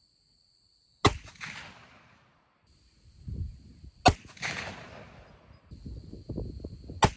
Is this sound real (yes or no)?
yes